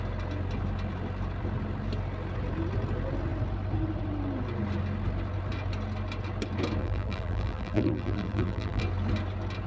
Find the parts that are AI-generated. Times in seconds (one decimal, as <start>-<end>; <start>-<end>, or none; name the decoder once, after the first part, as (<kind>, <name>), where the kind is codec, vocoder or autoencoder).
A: 6.8-8.8 (vocoder, BigVGAN v2)